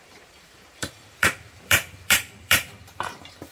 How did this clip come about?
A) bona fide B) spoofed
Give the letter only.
B